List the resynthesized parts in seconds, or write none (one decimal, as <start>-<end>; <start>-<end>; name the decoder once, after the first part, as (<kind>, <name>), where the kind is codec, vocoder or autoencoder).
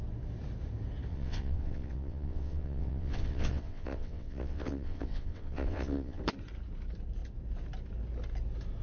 1.1-6.2 (vocoder, WaveNeXt)